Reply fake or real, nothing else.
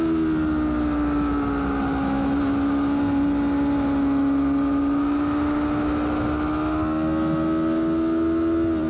real